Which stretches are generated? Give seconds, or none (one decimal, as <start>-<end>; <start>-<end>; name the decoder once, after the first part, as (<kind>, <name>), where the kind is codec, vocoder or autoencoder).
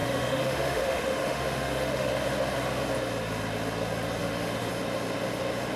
0.0-2.1 (autoencoder, DAC-VAE); 4.2-4.7